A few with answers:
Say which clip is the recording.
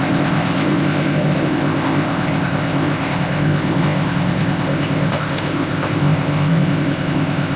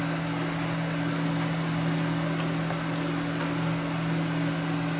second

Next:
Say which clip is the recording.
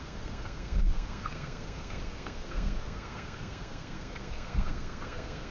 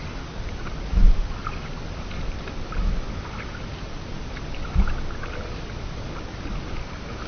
second